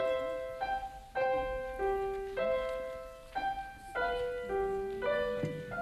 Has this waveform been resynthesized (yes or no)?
no